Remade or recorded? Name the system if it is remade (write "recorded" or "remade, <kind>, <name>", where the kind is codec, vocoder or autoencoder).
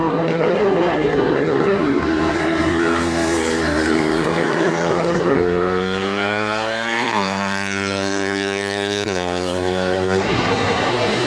remade, codec, SNAC